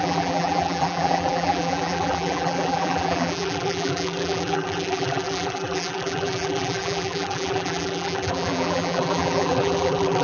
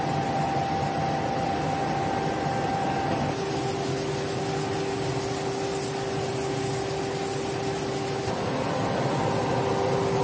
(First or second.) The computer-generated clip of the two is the first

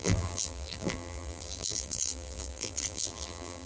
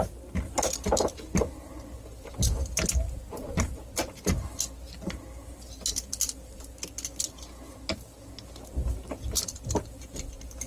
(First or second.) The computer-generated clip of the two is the first